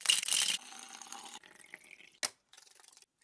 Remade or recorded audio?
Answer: recorded